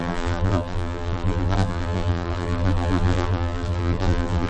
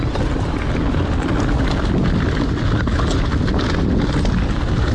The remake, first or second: first